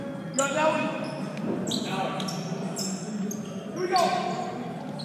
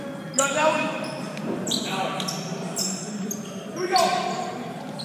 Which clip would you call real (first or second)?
first